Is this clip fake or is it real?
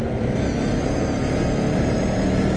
real